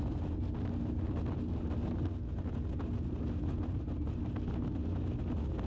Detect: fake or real real